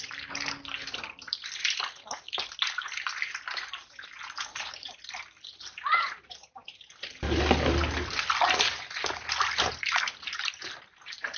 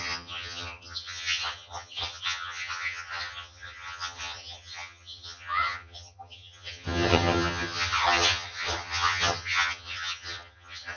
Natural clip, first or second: first